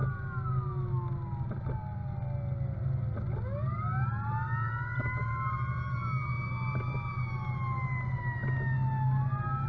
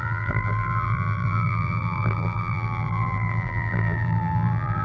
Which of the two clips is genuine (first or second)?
first